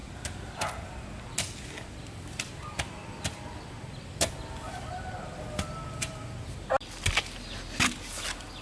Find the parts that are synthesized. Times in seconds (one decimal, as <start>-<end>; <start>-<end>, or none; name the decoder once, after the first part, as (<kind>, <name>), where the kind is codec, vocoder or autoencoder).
none